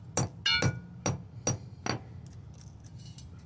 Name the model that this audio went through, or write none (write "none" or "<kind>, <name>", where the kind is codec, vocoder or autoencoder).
none